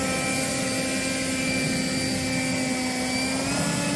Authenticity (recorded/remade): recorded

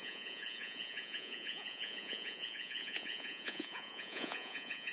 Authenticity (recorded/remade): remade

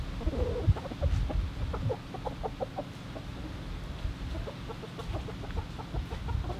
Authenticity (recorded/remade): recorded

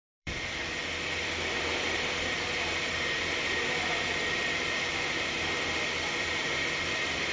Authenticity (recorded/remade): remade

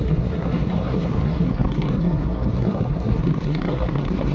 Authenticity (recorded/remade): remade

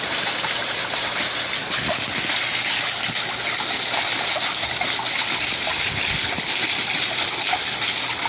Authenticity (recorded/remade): recorded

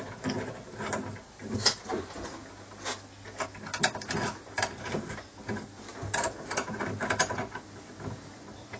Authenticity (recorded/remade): recorded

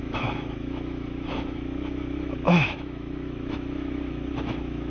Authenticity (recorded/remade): remade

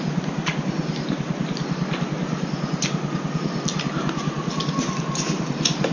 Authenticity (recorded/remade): recorded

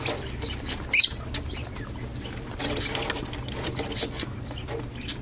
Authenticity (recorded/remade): recorded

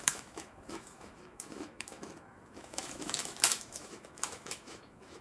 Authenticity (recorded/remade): remade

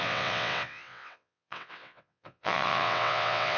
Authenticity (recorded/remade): remade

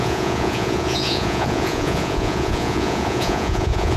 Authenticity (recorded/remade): remade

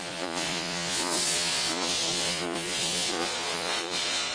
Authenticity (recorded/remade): remade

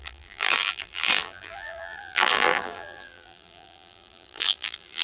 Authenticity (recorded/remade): remade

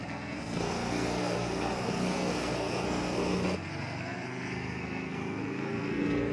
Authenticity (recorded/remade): remade